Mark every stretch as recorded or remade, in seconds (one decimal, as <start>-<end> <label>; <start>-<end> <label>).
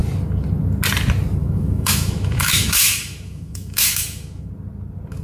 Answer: 0.0-1.4 recorded; 1.4-4.5 remade; 4.5-5.2 recorded